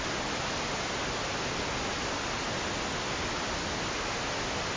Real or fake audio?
real